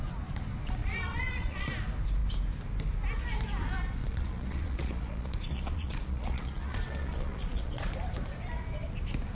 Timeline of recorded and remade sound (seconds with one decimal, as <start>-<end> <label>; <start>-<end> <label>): 0.0-0.8 recorded; 0.8-1.7 remade; 1.7-4.0 recorded; 4.0-7.9 remade; 7.9-9.3 recorded